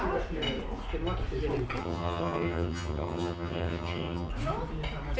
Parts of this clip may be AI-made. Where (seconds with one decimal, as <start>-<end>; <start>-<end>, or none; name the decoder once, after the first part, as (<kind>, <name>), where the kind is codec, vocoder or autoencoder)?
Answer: 1.8-4.3 (vocoder, HiFi-GAN)